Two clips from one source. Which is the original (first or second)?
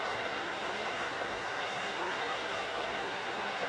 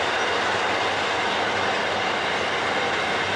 second